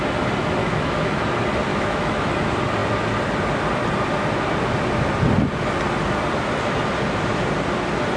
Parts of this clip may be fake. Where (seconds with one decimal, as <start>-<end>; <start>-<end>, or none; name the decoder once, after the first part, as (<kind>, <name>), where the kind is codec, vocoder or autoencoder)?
0.6-1.2 (autoencoder, DAC-VAE); 1.7-2.3